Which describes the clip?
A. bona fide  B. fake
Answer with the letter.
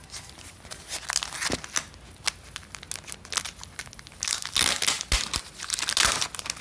A